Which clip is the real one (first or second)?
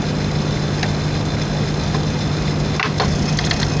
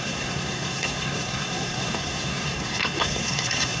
first